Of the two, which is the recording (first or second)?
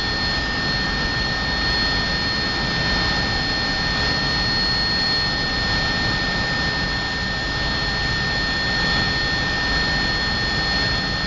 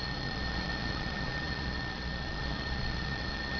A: first